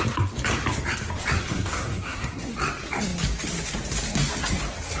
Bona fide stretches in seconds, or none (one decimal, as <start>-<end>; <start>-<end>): 0.0-1.5; 2.5-5.0

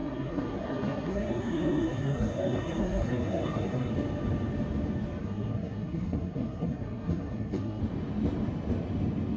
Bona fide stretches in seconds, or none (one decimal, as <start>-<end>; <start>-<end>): 3.9-5.2; 7.8-9.4

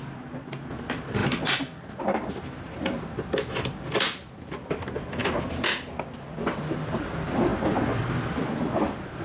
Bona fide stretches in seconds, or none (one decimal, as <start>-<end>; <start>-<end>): 0.0-1.2; 2.3-9.2

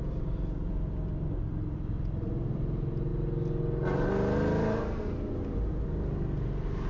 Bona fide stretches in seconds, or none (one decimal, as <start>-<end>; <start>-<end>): 3.1-6.9

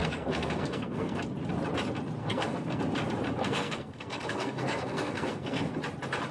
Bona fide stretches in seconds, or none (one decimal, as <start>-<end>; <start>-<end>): 1.2-2.2; 2.8-3.4; 5.7-6.3

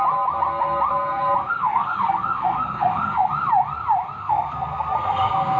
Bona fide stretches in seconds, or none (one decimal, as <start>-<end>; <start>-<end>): 0.0-1.4; 3.3-4.2

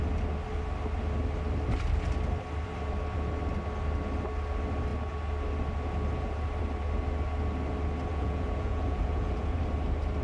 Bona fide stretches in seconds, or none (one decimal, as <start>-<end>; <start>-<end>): 0.0-8.1; 9.6-10.2

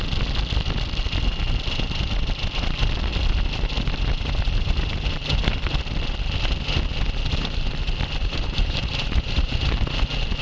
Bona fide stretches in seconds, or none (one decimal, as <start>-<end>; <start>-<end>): 0.0-8.2; 10.0-10.4